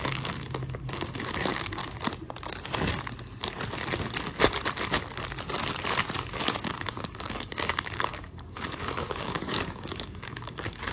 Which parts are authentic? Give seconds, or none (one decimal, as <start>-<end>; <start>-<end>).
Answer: 1.8-6.3

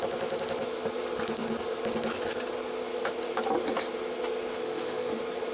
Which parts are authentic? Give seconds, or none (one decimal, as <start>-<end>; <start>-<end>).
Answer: 0.0-4.6; 5.1-5.5

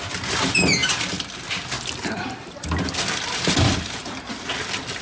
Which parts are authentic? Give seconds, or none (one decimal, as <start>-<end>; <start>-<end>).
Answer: 0.0-4.0; 4.6-5.0

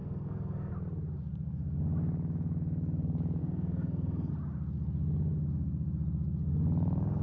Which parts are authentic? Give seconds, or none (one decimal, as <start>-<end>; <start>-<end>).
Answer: 0.7-3.4; 4.3-7.2

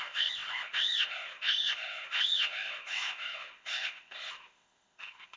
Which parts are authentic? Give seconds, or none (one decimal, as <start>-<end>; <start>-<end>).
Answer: none